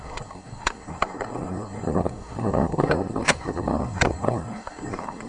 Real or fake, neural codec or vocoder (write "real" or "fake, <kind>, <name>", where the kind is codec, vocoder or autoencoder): fake, codec, SNAC